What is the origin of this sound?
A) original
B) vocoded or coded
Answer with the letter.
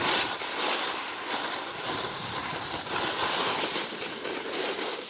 A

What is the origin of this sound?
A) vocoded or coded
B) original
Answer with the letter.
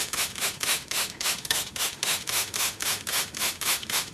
A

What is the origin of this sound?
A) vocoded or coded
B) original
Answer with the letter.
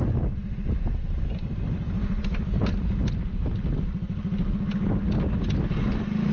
B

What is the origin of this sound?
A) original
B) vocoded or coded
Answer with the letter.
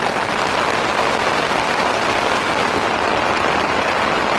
A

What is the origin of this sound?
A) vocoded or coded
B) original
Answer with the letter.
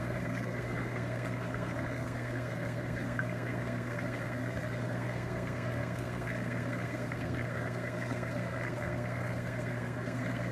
A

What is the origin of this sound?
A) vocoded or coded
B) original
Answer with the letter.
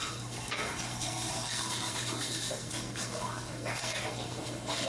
A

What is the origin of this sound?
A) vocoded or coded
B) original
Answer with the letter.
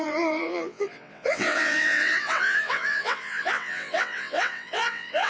A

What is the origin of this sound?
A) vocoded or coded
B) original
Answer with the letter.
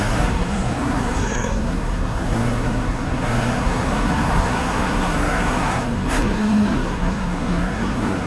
A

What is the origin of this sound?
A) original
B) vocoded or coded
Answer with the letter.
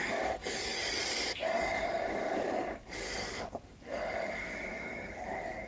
B